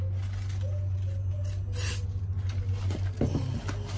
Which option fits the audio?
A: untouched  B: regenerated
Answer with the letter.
A